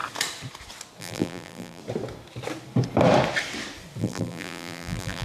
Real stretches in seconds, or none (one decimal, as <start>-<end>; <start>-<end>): 0.0-1.0; 1.8-4.0